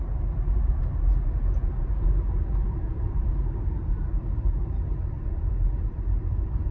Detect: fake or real fake